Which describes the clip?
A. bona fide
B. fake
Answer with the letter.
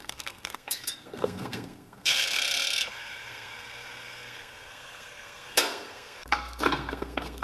B